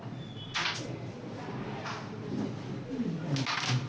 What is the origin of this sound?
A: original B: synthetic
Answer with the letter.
A